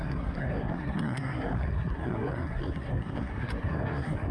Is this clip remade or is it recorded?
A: remade